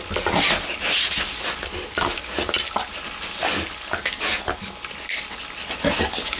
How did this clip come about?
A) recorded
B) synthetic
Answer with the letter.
A